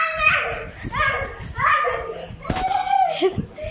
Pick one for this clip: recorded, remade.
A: recorded